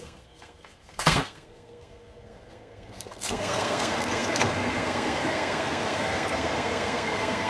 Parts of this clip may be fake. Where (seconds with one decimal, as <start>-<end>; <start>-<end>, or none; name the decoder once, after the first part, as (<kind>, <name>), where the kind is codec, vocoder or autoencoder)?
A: 0.0-7.5 (codec, SNAC)